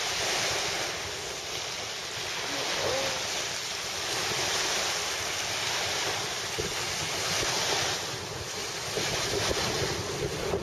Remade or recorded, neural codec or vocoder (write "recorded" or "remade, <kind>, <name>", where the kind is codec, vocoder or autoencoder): recorded